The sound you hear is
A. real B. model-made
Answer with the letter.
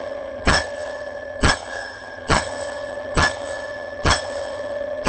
B